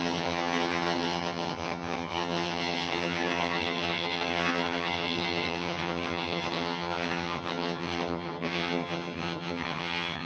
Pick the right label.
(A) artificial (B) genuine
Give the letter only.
A